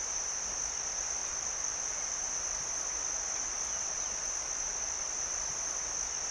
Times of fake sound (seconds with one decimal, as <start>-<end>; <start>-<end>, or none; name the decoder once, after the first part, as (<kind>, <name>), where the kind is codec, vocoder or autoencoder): 1.2-2.6 (vocoder, BigVGAN v2)